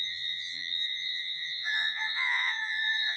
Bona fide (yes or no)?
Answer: no